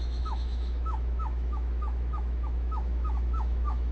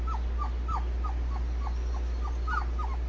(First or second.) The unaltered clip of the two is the second